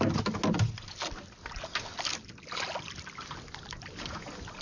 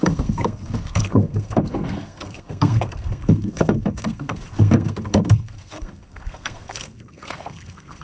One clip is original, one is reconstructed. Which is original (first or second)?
first